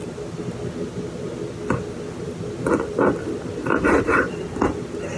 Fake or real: real